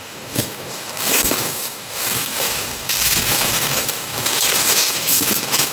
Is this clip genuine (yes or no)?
no